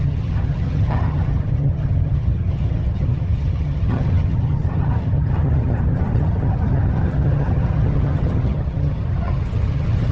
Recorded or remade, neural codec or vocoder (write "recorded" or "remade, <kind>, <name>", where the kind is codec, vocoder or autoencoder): remade, vocoder, HiFi-GAN